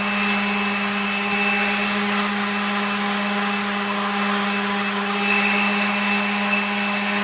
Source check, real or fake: real